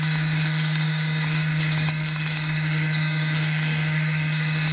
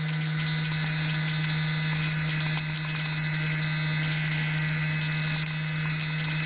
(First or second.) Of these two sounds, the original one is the second